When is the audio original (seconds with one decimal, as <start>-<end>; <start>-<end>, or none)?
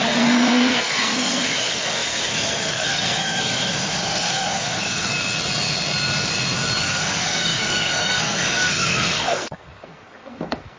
5.1-6.8